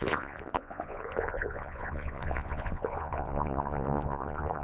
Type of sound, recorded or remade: remade